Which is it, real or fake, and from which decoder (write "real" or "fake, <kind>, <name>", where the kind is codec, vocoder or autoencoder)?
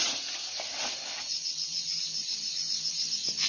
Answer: real